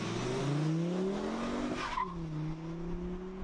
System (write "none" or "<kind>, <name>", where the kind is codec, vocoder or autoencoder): none